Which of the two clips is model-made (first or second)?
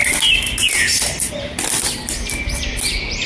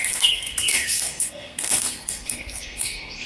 second